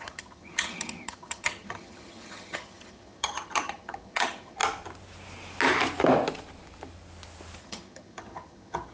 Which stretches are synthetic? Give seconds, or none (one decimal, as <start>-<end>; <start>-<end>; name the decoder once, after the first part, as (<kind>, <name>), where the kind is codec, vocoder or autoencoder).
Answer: 0.0-4.6 (vocoder, HiFi-GAN); 7.6-8.9